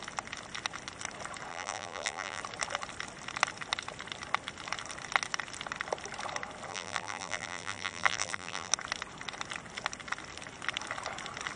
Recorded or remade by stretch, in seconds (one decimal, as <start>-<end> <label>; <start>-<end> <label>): 0.0-1.5 recorded; 1.5-2.4 remade; 2.4-6.7 recorded; 6.7-8.7 remade; 8.7-11.6 recorded